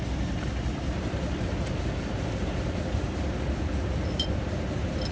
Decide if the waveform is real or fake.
real